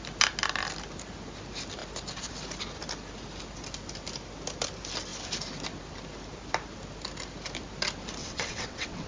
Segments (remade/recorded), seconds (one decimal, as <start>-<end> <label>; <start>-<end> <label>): 0.0-8.2 recorded; 8.2-9.1 remade